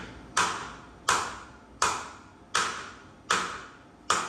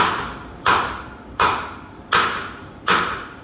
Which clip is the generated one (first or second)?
second